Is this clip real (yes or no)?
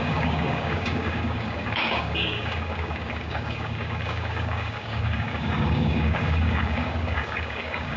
no